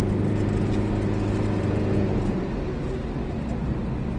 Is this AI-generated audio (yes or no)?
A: no